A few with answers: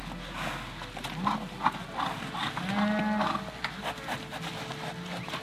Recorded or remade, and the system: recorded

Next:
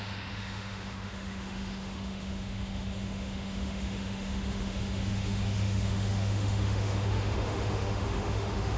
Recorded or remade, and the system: remade, autoencoder, DAC-VAE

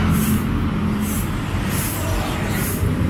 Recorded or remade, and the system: recorded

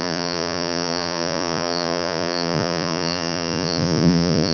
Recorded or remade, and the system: remade, vocoder, Vocos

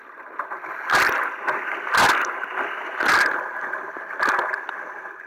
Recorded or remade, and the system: recorded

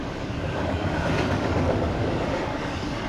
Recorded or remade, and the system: remade, codec, DAC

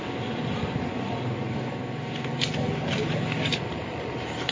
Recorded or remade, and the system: recorded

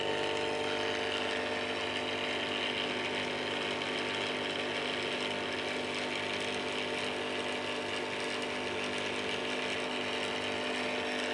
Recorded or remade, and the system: recorded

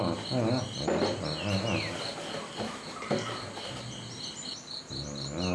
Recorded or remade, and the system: recorded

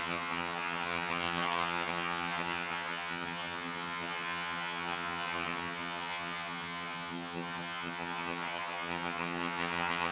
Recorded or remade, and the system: remade, vocoder, HiFi-GAN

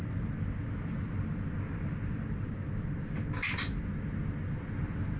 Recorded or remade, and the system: recorded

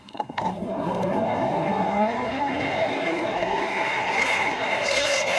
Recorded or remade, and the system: remade, codec, SNAC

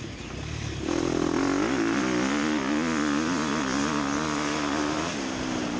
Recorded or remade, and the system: recorded